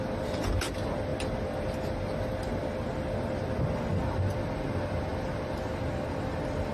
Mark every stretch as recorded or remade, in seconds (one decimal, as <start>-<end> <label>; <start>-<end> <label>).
0.0-6.7 recorded